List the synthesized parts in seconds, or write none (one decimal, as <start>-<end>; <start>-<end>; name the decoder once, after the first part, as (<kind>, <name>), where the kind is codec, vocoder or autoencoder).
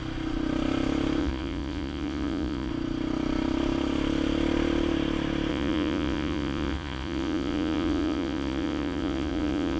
1.2-2.7 (vocoder, Vocos); 5.5-9.8